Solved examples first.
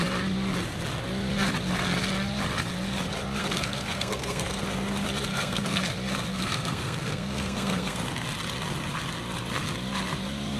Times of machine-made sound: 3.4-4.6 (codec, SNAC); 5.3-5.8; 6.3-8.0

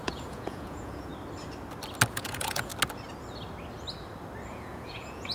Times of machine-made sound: 0.0-1.1 (vocoder, Vocos); 2.1-2.7; 4.5-5.3